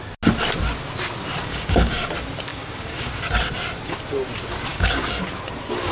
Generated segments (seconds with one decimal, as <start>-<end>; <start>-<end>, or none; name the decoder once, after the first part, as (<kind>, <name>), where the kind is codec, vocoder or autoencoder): 1.4-2.1 (codec, DAC); 2.5-3.1; 4.7-5.2